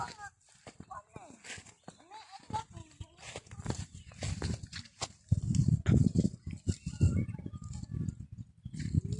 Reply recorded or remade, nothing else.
recorded